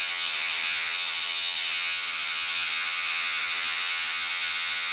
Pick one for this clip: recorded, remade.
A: remade